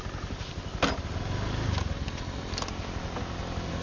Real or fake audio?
real